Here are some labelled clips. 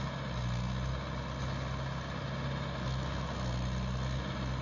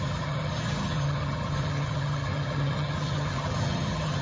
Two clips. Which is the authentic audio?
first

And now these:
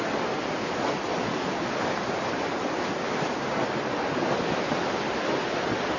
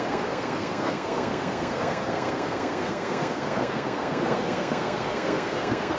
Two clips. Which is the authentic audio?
first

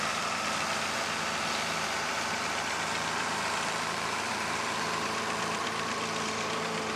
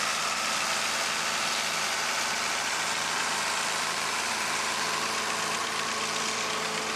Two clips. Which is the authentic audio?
second